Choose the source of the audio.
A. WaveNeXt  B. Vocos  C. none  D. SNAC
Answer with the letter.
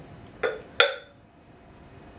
C